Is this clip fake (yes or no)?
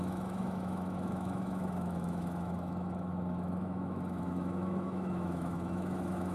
yes